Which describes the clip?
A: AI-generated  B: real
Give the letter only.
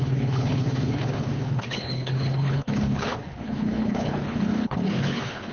A